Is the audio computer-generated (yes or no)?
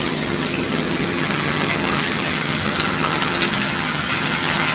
yes